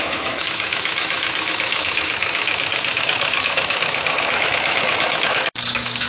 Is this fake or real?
fake